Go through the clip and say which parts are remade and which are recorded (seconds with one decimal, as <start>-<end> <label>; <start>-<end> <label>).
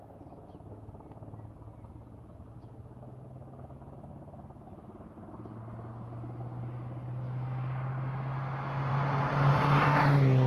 0.0-10.5 recorded